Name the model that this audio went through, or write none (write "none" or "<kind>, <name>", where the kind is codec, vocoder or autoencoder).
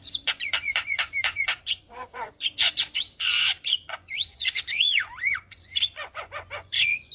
vocoder, Vocos